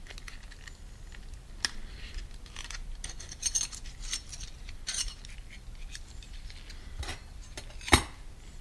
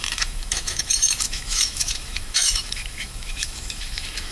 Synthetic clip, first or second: second